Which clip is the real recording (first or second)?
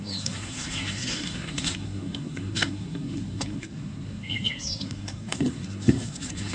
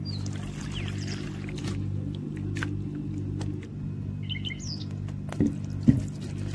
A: second